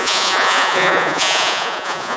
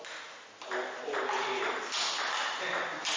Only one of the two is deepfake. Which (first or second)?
first